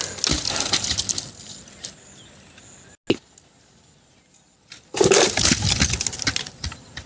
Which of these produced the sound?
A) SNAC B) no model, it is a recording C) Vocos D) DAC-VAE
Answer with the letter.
B